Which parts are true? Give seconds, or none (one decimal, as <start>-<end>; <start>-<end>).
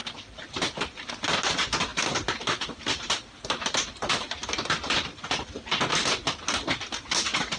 1.1-7.6